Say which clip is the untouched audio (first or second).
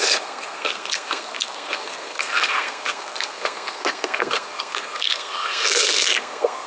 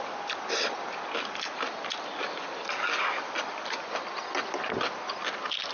second